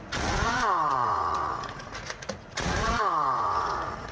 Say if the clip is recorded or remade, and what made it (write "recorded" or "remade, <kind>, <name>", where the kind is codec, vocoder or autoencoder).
remade, vocoder, Vocos